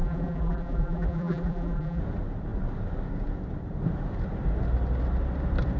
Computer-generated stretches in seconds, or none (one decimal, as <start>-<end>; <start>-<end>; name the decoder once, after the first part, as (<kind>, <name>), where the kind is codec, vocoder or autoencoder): 0.0-2.0 (vocoder, BigVGAN v2)